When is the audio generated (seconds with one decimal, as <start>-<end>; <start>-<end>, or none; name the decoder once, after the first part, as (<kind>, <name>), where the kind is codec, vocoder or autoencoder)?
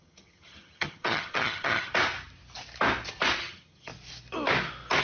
0.0-1.9 (vocoder, HiFi-GAN); 3.4-3.9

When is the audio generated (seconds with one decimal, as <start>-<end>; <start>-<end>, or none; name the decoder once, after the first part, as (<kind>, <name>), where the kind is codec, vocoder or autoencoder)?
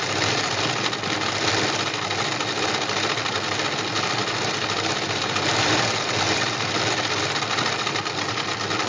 none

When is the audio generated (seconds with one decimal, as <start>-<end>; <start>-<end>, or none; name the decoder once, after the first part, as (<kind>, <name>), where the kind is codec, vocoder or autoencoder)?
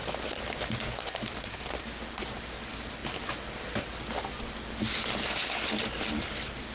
none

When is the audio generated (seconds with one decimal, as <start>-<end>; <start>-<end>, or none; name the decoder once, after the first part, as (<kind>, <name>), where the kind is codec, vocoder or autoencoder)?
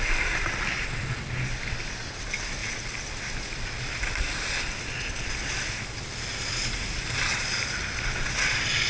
none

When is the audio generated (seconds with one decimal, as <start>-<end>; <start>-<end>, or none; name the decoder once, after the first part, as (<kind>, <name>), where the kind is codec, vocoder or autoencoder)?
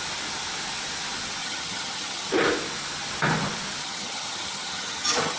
1.4-2.3 (vocoder, HiFi-GAN); 3.8-5.4